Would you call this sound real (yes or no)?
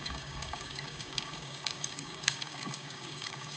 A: no